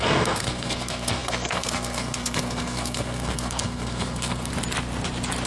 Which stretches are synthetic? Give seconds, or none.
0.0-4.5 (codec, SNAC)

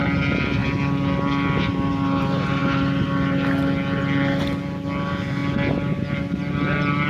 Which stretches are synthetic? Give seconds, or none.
none

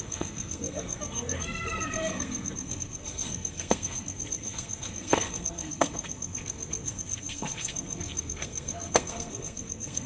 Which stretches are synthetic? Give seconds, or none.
0.0-10.1 (codec, SNAC)

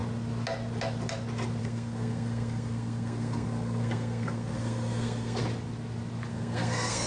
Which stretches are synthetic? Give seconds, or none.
1.6-5.4 (codec, SNAC); 6.3-7.1

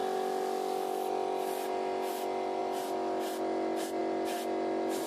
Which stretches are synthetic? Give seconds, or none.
none